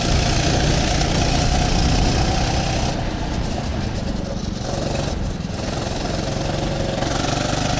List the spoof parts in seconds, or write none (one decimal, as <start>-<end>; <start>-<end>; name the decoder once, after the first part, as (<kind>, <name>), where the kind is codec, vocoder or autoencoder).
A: none